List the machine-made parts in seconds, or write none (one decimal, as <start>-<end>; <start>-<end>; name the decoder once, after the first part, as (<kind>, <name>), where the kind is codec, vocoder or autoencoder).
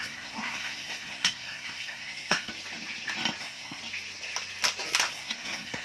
0.0-2.5 (codec, SNAC); 3.4-3.8; 5.1-5.8